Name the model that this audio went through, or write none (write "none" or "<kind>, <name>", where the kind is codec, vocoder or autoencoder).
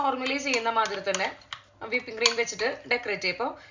none